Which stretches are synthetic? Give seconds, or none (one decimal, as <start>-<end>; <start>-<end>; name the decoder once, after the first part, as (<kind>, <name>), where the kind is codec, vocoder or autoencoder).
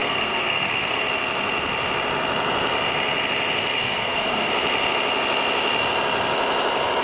0.0-1.0 (codec, SNAC); 3.8-4.5